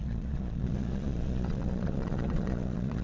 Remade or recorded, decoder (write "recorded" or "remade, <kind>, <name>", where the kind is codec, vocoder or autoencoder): remade, vocoder, Vocos